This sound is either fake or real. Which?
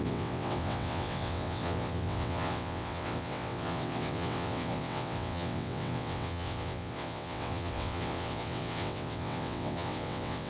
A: fake